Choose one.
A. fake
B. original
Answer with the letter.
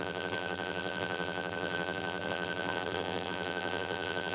A